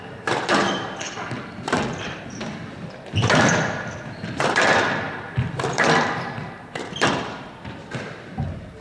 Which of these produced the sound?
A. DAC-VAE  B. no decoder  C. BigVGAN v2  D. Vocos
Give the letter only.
C